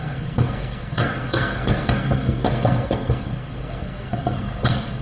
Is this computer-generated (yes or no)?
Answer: yes